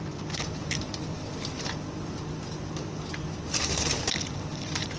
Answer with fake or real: real